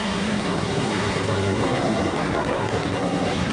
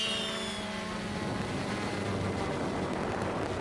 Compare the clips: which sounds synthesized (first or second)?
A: first